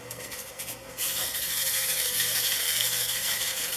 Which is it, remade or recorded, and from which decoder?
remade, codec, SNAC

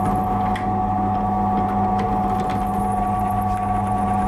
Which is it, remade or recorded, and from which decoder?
recorded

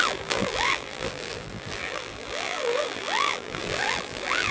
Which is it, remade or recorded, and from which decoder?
remade, vocoder, BigVGAN v2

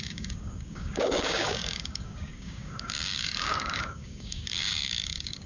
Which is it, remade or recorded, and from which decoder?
remade, codec, DAC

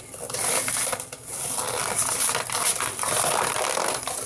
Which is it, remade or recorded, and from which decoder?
recorded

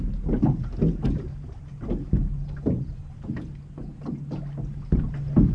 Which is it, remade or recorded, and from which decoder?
recorded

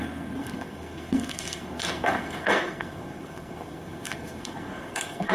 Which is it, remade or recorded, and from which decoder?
remade, codec, SNAC